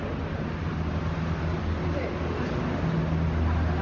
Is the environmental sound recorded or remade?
recorded